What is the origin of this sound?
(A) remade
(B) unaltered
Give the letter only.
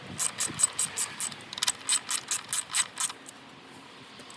B